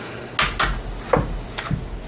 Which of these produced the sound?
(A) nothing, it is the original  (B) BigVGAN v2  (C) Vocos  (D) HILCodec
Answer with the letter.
A